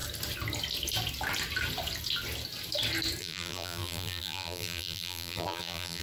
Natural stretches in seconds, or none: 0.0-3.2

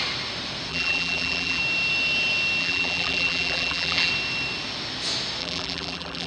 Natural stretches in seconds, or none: 0.0-0.7; 1.6-2.6; 4.1-5.4

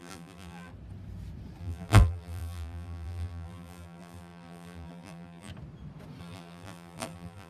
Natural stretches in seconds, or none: 0.7-1.6; 5.5-6.2